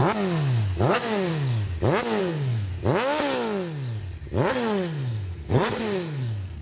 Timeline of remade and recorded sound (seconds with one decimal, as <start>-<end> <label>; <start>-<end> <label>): 0.0-0.9 recorded; 0.9-1.3 remade; 1.3-2.2 recorded; 2.2-2.7 remade; 2.7-4.5 recorded; 4.5-6.6 remade